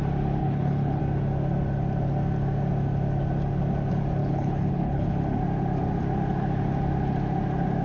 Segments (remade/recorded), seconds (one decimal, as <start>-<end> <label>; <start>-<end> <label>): 0.0-0.4 recorded; 0.4-1.0 remade; 1.0-4.2 recorded; 4.2-5.2 remade; 5.2-7.8 recorded